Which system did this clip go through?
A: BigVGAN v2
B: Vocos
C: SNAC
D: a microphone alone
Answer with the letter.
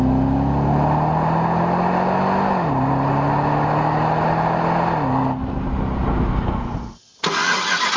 D